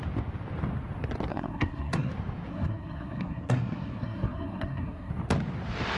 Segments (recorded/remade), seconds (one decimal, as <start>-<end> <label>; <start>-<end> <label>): 0.0-1.3 recorded; 1.3-2.1 remade; 2.1-2.5 recorded; 2.5-5.1 remade; 5.1-6.0 recorded

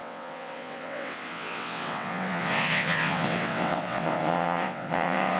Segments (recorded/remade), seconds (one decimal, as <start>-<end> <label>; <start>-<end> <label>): 0.0-5.4 remade

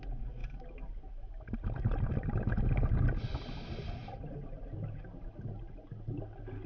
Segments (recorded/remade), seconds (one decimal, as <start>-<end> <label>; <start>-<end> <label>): 0.0-6.7 recorded

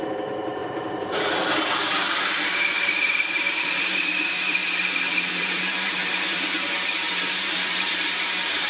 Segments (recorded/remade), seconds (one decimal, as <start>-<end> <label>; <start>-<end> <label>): 0.0-4.6 remade; 4.6-5.3 recorded; 5.3-6.0 remade; 6.0-7.1 recorded; 7.1-8.7 remade

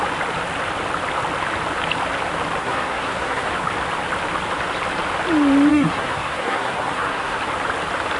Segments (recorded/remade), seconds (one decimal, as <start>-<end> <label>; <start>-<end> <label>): 0.0-2.6 recorded; 2.6-3.5 remade; 3.5-5.7 recorded; 5.7-7.4 remade; 7.4-8.2 recorded

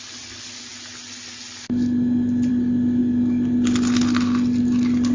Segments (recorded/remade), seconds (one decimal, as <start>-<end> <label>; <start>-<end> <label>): 0.0-5.1 recorded

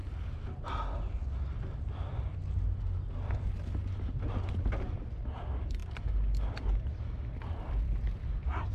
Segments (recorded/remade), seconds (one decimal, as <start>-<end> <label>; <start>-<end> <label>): 0.0-5.8 recorded; 5.8-8.2 remade; 8.2-8.7 recorded